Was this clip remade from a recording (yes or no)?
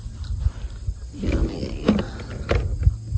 no